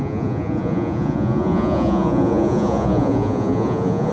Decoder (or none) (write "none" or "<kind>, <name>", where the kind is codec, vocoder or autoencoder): vocoder, Vocos